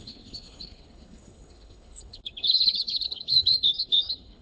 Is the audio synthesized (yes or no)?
yes